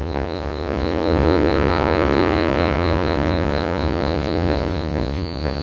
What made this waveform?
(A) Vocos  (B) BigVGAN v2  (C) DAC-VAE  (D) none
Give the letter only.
A